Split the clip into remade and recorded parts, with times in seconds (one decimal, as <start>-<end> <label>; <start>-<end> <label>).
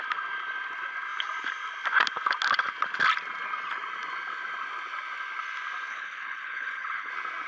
0.0-5.9 recorded; 5.9-7.1 remade; 7.1-7.5 recorded